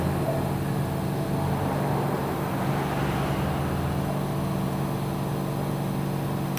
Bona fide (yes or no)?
yes